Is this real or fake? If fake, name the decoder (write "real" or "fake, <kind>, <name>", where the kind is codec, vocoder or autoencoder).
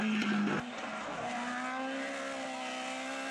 real